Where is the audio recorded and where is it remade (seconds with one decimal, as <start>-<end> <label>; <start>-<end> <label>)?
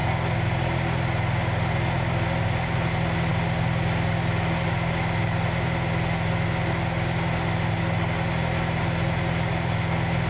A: 0.0-10.3 recorded